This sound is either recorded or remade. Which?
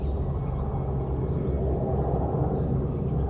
recorded